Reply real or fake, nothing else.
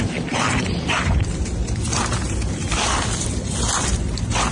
fake